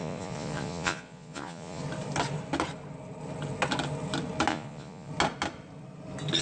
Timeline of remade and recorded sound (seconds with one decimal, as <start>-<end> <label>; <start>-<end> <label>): 0.0-1.8 remade; 1.8-4.5 recorded; 4.5-5.1 remade; 5.1-6.4 recorded